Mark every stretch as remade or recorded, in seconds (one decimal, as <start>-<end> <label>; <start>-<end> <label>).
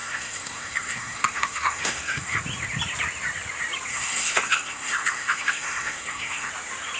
0.0-2.4 remade; 2.4-3.9 recorded; 3.9-6.5 remade; 6.5-7.0 recorded